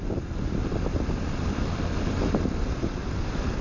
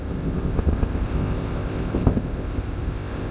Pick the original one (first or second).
first